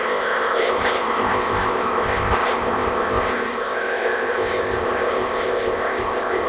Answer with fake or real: fake